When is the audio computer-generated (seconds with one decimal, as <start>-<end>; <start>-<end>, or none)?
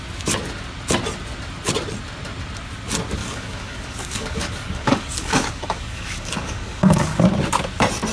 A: 3.2-7.2